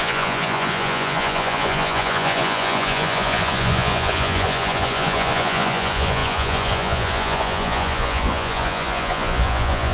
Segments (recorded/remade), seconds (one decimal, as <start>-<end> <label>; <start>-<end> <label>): 0.0-9.9 remade